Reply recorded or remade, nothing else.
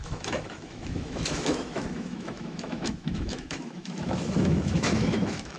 remade